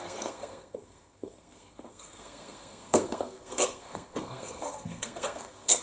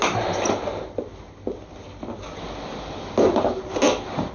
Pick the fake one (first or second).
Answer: first